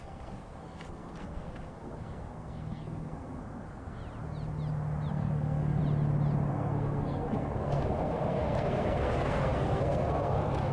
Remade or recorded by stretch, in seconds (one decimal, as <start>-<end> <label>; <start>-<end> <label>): 0.0-4.0 remade; 4.0-5.1 recorded; 5.1-5.8 remade; 5.8-6.5 recorded; 6.5-10.7 remade